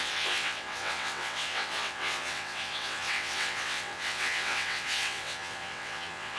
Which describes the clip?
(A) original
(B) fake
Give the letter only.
B